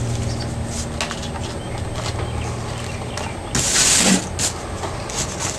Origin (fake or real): real